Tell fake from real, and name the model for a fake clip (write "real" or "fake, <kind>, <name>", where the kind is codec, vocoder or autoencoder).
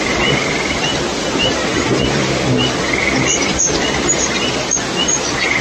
real